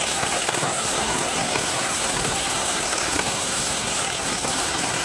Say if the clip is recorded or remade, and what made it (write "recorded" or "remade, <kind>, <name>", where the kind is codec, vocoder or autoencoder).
remade, codec, SNAC